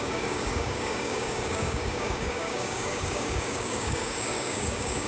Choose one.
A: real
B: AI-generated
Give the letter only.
B